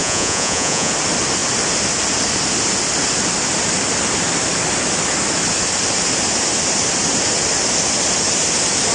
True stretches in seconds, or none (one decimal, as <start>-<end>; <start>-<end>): 0.9-8.9